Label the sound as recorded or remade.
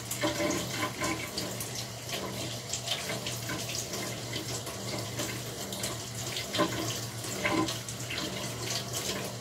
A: remade